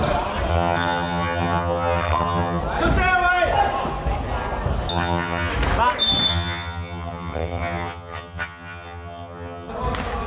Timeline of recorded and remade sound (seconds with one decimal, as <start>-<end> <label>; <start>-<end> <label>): 0.0-0.5 recorded; 0.5-2.6 remade; 2.6-4.9 recorded; 4.9-5.5 remade; 5.5-6.3 recorded; 6.3-9.7 remade; 9.7-10.3 recorded